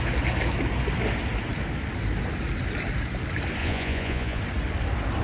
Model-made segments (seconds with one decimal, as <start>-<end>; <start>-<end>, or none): 3.6-4.4